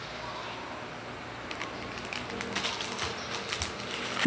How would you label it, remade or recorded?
recorded